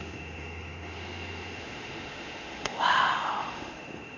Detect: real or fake fake